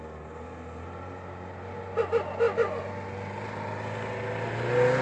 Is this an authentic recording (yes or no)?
yes